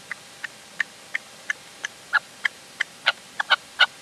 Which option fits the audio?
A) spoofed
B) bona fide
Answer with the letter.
A